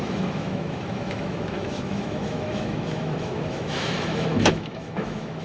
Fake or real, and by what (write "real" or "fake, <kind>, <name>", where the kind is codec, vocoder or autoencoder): fake, autoencoder, DAC-VAE